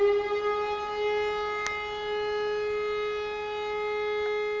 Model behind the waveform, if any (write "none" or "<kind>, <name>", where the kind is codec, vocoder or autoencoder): none